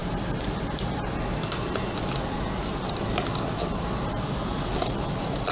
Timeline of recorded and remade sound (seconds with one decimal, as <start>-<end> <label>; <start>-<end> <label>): 0.0-5.5 recorded